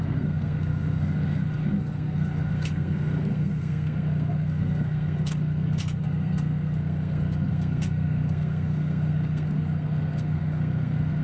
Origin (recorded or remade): remade